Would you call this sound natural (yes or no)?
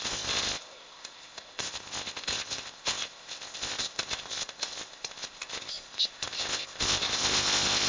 no